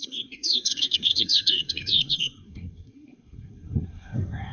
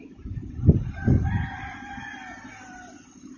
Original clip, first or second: second